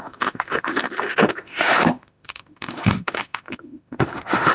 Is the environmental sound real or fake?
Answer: fake